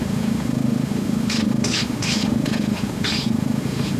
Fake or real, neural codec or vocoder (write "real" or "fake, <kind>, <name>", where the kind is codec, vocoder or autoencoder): fake, autoencoder, DAC-VAE